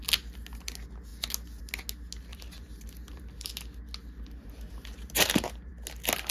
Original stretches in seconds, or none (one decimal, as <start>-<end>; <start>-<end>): 0.0-2.3; 3.5-4.0; 5.7-6.3

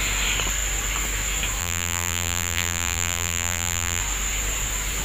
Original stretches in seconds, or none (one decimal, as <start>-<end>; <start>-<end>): 0.0-1.6; 4.0-5.0